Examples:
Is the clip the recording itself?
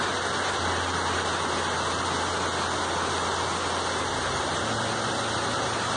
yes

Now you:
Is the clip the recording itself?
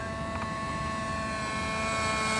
yes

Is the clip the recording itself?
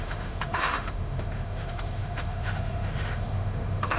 no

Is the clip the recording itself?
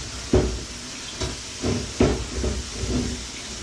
yes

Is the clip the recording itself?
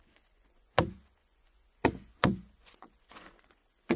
no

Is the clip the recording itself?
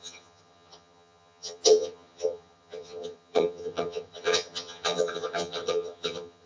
no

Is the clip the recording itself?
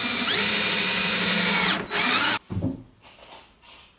yes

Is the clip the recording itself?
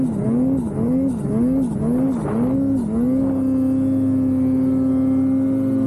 yes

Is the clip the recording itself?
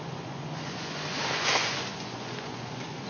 no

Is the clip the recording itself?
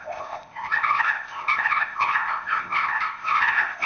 no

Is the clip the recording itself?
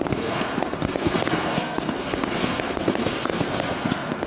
no